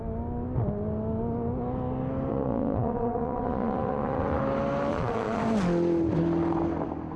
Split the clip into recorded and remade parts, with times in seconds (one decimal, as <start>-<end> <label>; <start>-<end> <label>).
0.0-2.3 recorded; 2.3-4.4 remade; 4.4-4.9 recorded; 4.9-5.4 remade; 5.4-7.2 recorded